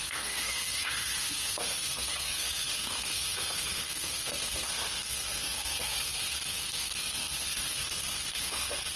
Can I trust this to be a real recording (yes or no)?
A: no